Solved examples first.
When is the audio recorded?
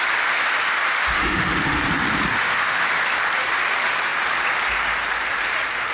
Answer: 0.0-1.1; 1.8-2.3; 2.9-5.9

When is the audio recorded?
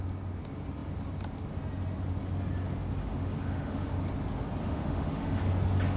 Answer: 0.0-3.0; 3.9-4.6; 5.4-6.0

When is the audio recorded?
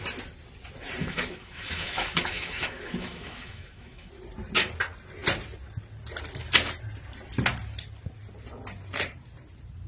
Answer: 0.0-1.0; 4.1-9.9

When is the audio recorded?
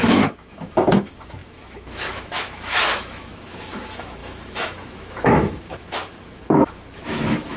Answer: none